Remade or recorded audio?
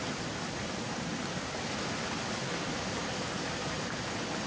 recorded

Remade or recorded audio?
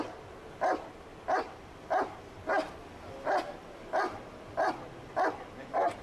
recorded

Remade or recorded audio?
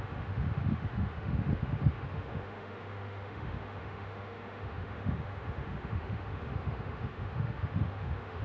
remade